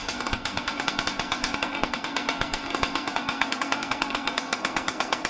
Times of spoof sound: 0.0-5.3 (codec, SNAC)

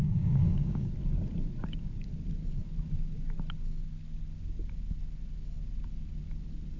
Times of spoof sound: 0.0-0.9 (codec, DAC)

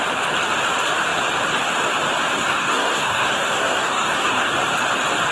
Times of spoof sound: 2.4-4.5 (codec, SNAC)